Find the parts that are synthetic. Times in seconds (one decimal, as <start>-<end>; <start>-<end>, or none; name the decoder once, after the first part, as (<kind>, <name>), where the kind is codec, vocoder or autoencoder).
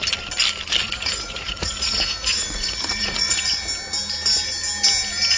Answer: 0.8-3.6 (vocoder, Vocos)